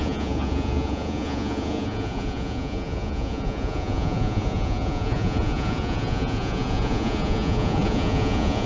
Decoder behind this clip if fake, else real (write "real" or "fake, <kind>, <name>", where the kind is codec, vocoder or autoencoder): fake, vocoder, Vocos